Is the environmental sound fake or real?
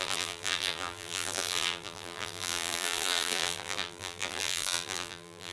fake